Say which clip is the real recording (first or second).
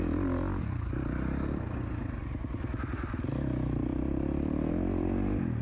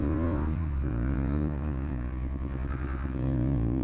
first